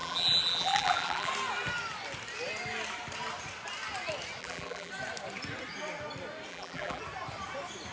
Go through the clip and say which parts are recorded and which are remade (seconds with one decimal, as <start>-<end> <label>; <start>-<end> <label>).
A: 0.0-1.3 remade; 1.3-4.4 recorded; 4.4-4.9 remade; 4.9-6.5 recorded; 6.5-7.0 remade; 7.0-7.9 recorded